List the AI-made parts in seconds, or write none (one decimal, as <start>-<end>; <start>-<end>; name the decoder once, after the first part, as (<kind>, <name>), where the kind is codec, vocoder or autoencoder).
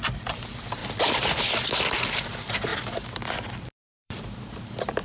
0.8-1.4 (vocoder, BigVGAN v2); 2.7-5.0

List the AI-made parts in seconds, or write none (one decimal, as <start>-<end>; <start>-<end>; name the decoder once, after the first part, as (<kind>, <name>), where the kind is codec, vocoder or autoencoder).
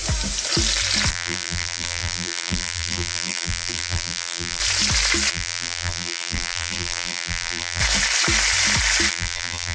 1.1-4.6 (vocoder, BigVGAN v2); 5.3-7.8; 9.1-9.7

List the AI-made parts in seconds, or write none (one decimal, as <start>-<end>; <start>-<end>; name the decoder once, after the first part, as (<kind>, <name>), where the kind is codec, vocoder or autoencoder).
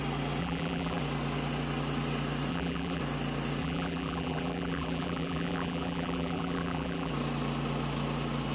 0.4-1.0 (vocoder, BigVGAN v2); 2.5-3.0; 3.6-7.1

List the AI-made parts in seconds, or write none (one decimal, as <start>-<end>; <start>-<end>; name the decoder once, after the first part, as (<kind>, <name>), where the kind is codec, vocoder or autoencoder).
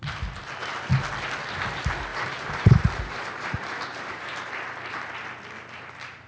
2.1-4.5 (vocoder, BigVGAN v2)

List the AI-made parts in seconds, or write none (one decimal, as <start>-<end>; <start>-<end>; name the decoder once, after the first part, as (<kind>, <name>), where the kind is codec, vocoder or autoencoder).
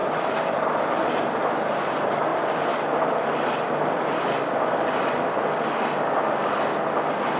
0.0-1.9 (vocoder, BigVGAN v2); 2.3-5.0